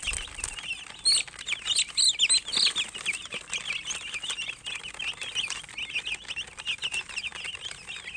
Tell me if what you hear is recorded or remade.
recorded